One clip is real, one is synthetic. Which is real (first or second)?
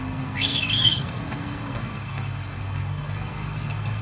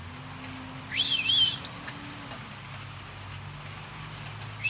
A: second